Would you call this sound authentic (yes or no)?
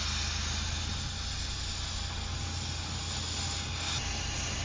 yes